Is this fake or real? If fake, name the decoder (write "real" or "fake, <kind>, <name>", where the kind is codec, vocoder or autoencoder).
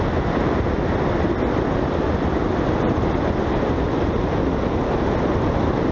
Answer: real